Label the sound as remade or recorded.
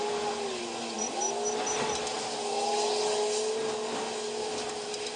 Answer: recorded